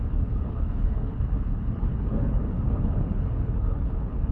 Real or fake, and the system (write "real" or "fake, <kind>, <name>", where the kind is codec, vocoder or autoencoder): fake, codec, HILCodec